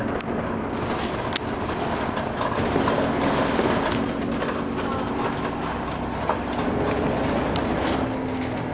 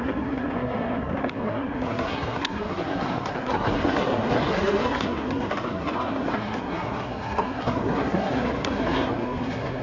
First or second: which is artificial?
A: second